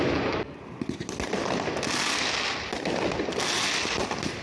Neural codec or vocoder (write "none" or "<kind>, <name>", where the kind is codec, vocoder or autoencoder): none